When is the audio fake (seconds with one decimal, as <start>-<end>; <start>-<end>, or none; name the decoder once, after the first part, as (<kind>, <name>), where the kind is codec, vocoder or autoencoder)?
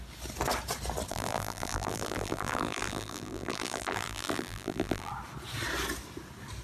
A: 1.1-5.1 (vocoder, BigVGAN v2)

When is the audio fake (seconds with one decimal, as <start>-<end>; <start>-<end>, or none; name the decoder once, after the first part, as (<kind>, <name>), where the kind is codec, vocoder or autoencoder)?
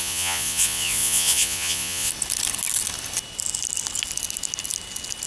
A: 0.0-2.1 (vocoder, Vocos)